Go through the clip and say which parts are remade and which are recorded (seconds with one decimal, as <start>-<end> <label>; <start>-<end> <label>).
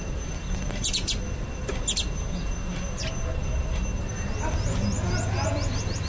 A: 0.0-6.1 recorded